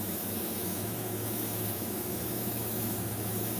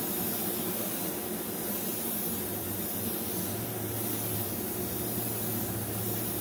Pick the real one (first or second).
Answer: second